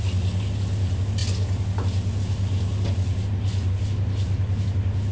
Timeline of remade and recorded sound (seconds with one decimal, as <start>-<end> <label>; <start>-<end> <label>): 0.0-5.1 recorded